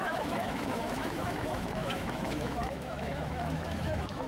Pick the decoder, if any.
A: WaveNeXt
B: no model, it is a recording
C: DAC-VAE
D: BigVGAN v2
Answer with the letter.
C